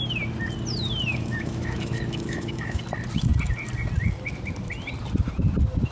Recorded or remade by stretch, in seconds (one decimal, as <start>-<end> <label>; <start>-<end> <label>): 0.0-1.1 recorded; 1.1-2.8 remade; 2.8-5.9 recorded